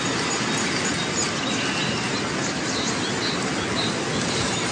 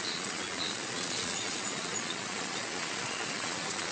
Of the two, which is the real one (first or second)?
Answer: first